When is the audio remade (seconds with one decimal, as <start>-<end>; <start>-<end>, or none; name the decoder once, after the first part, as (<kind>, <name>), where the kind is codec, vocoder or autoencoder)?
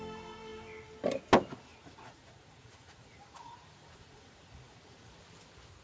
1.7-5.2 (vocoder, Vocos)